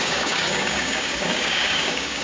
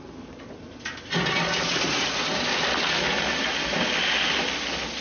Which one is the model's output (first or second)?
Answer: first